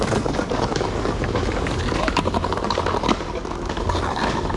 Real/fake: fake